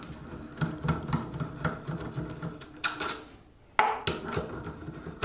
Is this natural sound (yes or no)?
yes